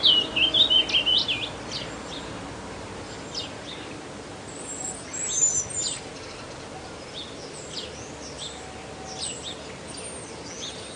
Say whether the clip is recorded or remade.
recorded